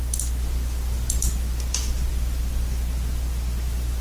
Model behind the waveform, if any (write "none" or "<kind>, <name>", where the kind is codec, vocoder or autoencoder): none